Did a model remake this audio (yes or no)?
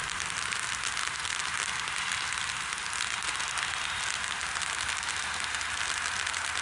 no